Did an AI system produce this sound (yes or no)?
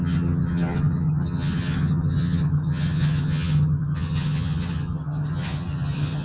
yes